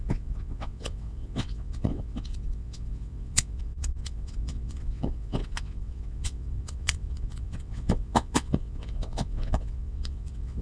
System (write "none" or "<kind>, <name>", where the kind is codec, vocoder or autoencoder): vocoder, WaveNeXt